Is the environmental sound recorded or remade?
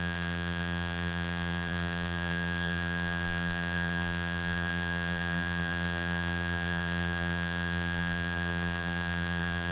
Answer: remade